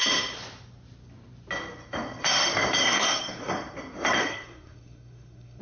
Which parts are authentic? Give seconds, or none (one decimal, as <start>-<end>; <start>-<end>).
0.0-2.8; 3.5-4.2